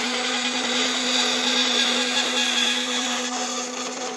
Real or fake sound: fake